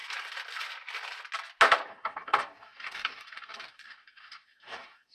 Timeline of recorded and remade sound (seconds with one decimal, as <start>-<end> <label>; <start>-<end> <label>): 0.0-1.9 recorded; 1.9-5.1 remade